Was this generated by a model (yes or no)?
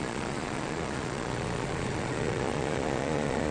yes